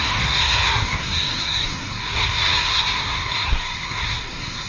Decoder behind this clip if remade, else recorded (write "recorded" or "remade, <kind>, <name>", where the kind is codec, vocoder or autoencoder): remade, codec, SNAC